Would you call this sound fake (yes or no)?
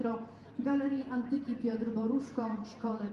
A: yes